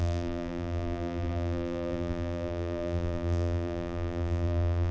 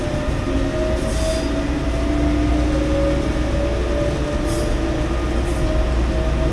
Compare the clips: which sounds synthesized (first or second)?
first